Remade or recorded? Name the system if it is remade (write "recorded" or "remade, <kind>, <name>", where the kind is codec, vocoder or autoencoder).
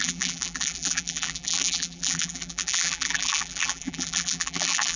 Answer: remade, vocoder, BigVGAN v2